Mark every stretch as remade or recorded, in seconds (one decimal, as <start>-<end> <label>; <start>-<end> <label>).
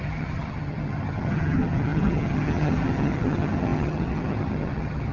0.0-5.1 remade